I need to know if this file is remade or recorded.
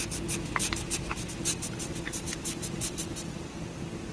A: recorded